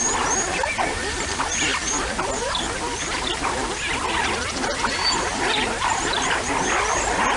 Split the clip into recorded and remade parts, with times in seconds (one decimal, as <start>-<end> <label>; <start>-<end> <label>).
0.0-1.7 recorded; 1.7-2.2 remade; 2.2-7.4 recorded